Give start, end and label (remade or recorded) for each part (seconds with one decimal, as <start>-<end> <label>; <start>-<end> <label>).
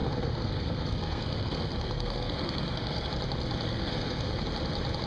0.0-3.1 remade; 3.1-3.7 recorded; 3.7-4.4 remade; 4.4-5.1 recorded